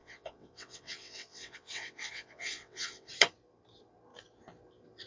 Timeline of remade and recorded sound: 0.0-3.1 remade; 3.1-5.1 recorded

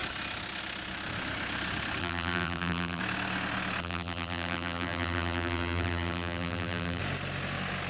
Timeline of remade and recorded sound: 0.0-2.0 recorded; 2.0-3.0 remade; 3.0-3.8 recorded; 3.8-7.0 remade; 7.0-7.9 recorded